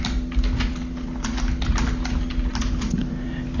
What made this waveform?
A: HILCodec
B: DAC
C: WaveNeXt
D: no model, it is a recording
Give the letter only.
D